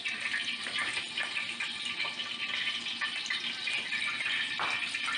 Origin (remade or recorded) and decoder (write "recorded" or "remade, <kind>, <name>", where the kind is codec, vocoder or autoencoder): recorded